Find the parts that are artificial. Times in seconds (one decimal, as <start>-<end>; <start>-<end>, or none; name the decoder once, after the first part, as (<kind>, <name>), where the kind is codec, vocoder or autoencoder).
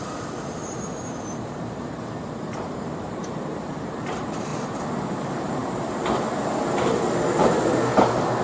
0.0-4.5 (vocoder, BigVGAN v2); 5.1-5.6